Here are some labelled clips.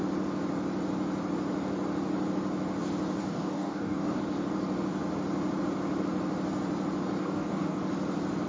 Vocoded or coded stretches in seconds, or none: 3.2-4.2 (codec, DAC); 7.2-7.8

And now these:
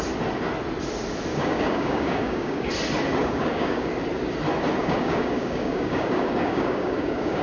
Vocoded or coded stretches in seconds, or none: 1.3-2.7 (codec, DAC); 3.2-3.9; 4.8-7.4